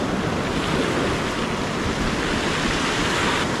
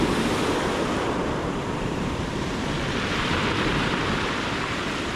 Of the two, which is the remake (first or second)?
second